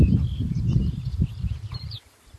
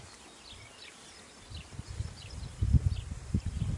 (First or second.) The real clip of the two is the second